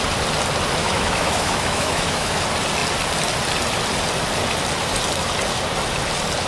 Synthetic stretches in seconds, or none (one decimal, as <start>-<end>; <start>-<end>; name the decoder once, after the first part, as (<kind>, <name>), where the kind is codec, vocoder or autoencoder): 0.8-2.4 (autoencoder, DAC-VAE)